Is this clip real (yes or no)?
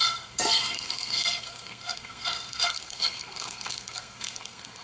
no